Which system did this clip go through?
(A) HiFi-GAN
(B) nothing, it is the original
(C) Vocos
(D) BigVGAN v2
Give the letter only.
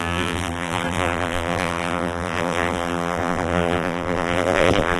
D